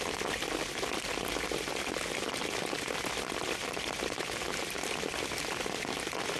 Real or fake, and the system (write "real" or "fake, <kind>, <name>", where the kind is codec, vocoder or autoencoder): real